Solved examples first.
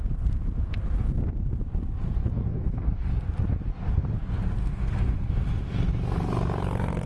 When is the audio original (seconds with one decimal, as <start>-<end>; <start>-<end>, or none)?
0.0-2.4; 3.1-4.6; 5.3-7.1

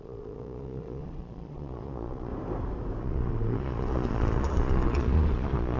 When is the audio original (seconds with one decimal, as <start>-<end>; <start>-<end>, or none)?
2.3-3.0

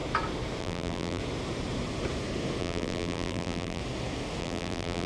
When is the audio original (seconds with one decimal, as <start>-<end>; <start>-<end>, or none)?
0.0-0.6; 1.2-2.6; 3.8-4.4